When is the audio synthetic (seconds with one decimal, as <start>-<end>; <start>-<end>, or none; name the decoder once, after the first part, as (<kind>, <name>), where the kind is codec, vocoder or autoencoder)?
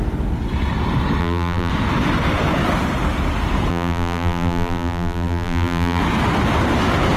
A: 1.2-1.7 (vocoder, BigVGAN v2); 3.7-6.0